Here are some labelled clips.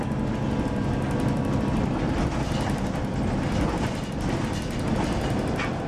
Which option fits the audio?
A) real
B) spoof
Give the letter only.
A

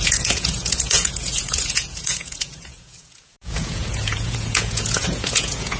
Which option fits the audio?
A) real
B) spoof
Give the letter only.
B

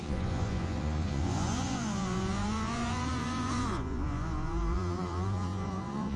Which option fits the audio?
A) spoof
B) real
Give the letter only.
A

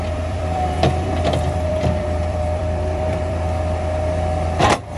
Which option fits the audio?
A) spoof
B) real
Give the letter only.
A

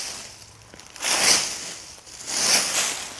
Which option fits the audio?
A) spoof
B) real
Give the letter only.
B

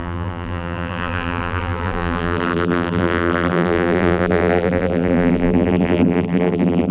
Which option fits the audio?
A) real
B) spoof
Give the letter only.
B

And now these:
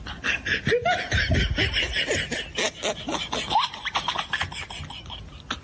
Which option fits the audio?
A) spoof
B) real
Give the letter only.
B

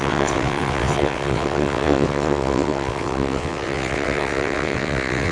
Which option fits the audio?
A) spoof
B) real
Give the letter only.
A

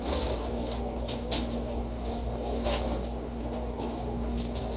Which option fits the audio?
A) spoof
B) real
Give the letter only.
A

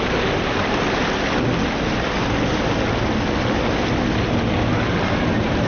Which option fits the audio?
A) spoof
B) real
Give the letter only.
B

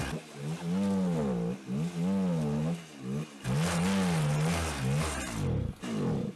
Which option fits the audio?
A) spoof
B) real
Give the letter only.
B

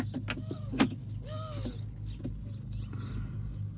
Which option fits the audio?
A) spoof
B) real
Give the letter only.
B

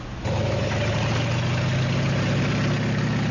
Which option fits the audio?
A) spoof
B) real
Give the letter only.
B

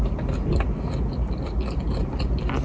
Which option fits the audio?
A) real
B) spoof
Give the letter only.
A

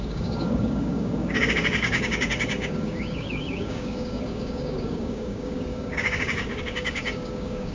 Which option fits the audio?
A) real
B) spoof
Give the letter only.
B